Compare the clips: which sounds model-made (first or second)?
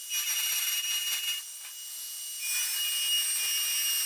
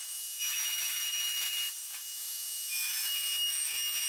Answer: second